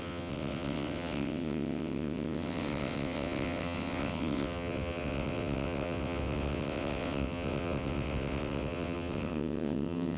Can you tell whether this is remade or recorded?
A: remade